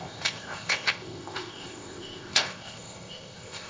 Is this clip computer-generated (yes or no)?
yes